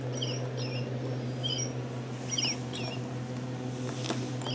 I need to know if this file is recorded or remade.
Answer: recorded